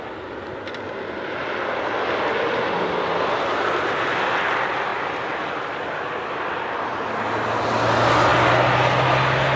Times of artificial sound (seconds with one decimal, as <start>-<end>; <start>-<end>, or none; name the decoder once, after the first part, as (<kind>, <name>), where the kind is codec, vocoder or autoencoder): none